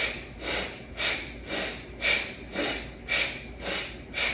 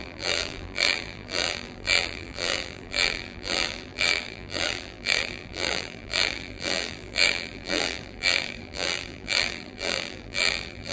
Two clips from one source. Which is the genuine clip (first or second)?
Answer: first